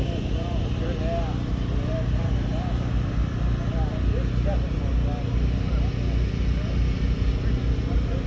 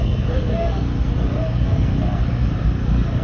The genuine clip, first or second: first